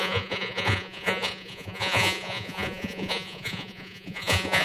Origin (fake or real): fake